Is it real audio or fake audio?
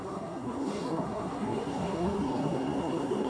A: fake